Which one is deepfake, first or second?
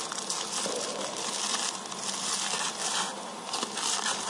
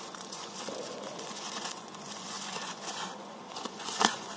second